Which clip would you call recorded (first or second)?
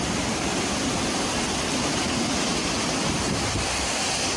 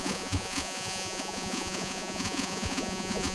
first